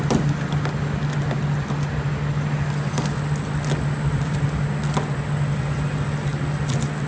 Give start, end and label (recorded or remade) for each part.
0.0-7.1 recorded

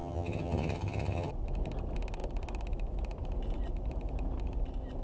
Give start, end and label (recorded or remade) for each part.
0.0-1.3 remade; 1.3-5.0 recorded

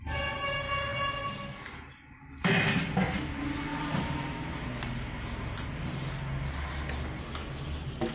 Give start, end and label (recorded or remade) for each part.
0.0-8.1 recorded